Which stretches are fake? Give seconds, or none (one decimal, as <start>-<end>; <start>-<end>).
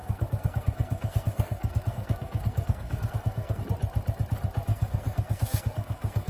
0.0-3.6; 4.7-6.3